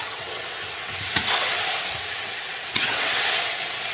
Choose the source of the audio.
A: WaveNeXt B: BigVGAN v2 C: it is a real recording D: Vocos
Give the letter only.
A